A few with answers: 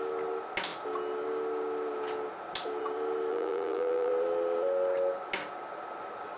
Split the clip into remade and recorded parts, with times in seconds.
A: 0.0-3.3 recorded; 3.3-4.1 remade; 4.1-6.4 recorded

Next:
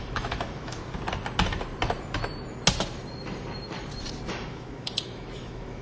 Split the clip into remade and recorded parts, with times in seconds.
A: 0.0-0.8 remade; 0.8-4.3 recorded; 4.3-5.8 remade

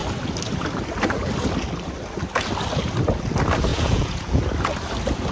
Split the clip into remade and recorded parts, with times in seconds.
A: 0.0-3.7 recorded; 3.7-4.4 remade; 4.4-5.3 recorded

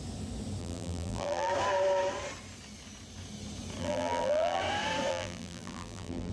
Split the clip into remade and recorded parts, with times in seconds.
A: 0.0-0.6 recorded; 0.6-1.5 remade; 1.5-3.8 recorded; 3.8-4.6 remade; 4.6-5.1 recorded; 5.1-6.3 remade

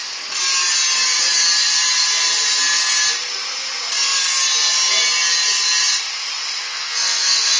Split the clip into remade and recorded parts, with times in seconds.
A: 0.0-6.6 recorded; 6.6-7.6 remade

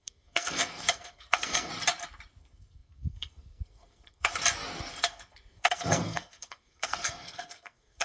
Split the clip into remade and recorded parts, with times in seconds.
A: 0.0-1.7 remade; 1.7-2.4 recorded; 2.4-4.3 remade; 4.3-4.9 recorded; 4.9-8.0 remade

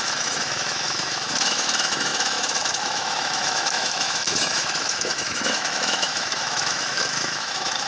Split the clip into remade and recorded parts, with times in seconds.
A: 0.0-7.9 remade